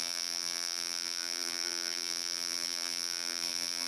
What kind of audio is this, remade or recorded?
remade